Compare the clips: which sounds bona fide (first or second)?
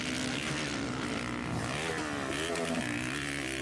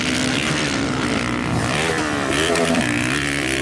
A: first